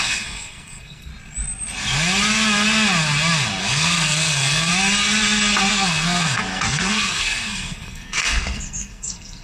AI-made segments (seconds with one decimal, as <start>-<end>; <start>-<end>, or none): 0.0-1.1; 3.6-4.7; 5.7-9.4